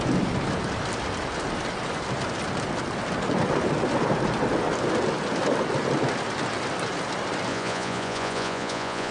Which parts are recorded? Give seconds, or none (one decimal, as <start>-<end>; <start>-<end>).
0.0-7.5